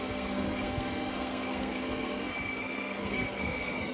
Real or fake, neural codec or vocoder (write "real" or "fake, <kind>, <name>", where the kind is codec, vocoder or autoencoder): fake, codec, SNAC